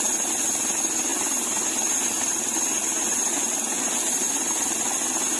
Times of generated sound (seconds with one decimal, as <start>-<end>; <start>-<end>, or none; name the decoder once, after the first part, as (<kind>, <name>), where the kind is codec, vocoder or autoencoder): none

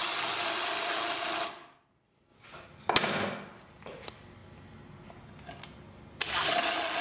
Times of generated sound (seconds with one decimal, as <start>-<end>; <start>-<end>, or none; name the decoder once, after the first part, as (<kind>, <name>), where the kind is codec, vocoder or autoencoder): none

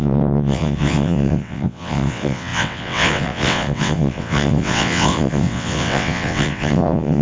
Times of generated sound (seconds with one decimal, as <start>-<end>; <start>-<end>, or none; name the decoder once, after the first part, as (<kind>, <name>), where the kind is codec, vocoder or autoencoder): 0.0-7.2 (vocoder, WaveNeXt)

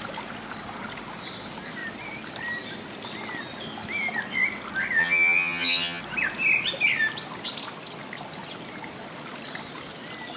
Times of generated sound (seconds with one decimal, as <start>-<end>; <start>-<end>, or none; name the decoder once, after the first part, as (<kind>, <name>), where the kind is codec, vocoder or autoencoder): 5.0-6.0 (vocoder, HiFi-GAN)

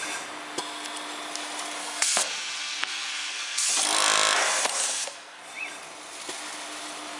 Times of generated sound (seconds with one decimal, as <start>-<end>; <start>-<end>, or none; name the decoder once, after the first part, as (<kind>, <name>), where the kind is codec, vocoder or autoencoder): 1.8-3.7 (codec, SNAC); 4.8-5.4

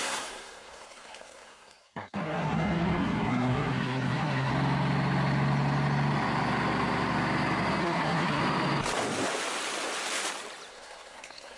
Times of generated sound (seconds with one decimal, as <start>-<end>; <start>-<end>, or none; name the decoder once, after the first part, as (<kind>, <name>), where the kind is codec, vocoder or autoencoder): 0.0-4.5 (codec, SNAC); 7.8-8.4; 10.7-11.6

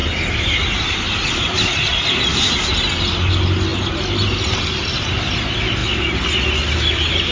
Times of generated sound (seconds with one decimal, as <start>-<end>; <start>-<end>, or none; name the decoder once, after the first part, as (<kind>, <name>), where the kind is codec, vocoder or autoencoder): none